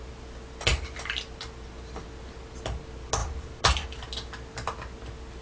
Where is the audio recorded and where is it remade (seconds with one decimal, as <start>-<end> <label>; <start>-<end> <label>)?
0.0-5.4 recorded